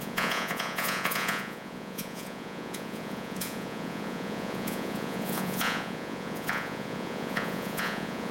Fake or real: fake